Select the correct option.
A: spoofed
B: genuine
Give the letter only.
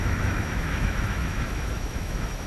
A